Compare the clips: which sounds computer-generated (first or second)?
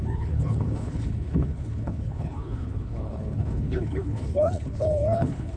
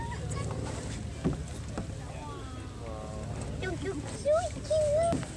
first